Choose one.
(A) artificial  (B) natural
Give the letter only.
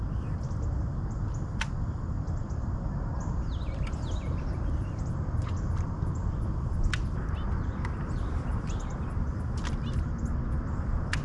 B